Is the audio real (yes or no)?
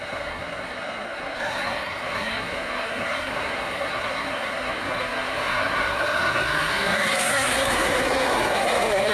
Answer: no